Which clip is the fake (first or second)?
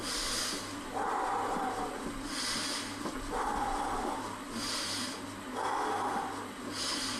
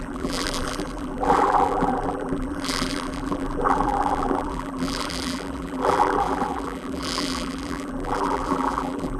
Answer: second